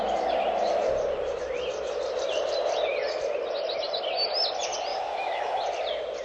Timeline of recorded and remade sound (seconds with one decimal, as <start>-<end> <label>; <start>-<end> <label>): 0.0-4.9 recorded; 4.9-5.6 remade; 5.6-6.2 recorded